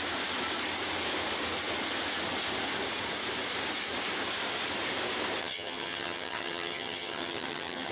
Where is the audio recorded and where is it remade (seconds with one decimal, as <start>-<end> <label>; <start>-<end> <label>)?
0.0-5.4 recorded; 5.4-7.9 remade